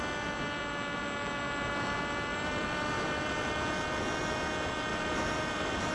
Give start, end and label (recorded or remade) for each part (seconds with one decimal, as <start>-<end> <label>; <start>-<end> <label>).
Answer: 0.0-2.3 recorded; 2.3-3.5 remade; 3.5-4.9 recorded; 4.9-5.9 remade